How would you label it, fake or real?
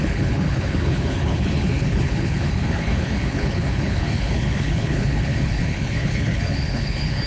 fake